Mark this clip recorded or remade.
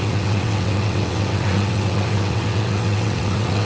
remade